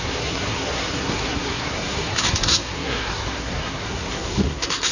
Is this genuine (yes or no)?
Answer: no